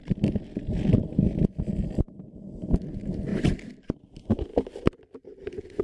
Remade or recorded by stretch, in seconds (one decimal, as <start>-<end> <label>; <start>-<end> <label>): 0.0-3.3 recorded; 3.3-4.0 remade; 4.0-4.5 recorded; 4.5-5.8 remade